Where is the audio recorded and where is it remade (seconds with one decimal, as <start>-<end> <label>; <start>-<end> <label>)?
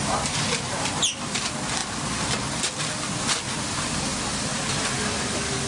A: 0.0-5.7 recorded